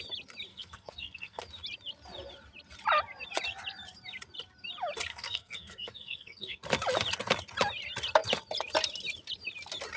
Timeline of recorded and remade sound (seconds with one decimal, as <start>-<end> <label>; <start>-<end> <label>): 0.0-0.5 recorded; 0.5-1.4 remade; 1.4-5.1 recorded; 5.1-6.6 remade; 6.6-10.0 recorded